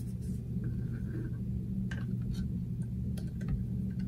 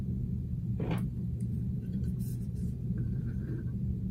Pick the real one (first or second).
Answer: first